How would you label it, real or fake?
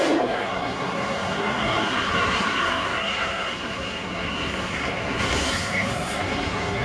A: fake